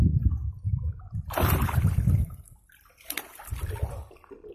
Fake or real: fake